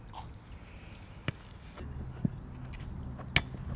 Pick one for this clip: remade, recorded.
recorded